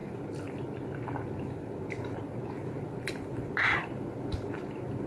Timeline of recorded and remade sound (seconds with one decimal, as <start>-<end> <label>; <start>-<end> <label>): 0.0-5.1 recorded